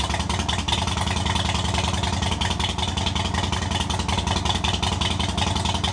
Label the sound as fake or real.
real